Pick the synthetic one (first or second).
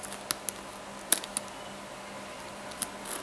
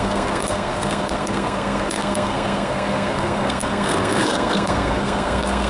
second